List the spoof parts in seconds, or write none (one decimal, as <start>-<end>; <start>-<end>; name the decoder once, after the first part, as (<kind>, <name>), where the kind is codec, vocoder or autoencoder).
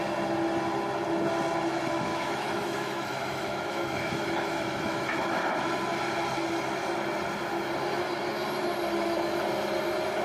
2.1-5.6 (autoencoder, DAC-VAE)